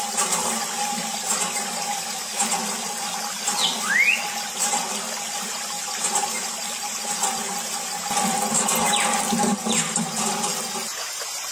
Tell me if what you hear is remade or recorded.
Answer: recorded